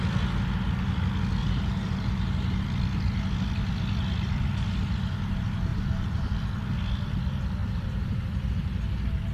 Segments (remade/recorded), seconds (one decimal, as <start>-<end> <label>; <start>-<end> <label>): 0.0-1.4 recorded; 1.4-2.6 remade; 2.6-5.7 recorded; 5.7-6.3 remade; 6.3-7.6 recorded; 7.6-8.2 remade; 8.2-9.3 recorded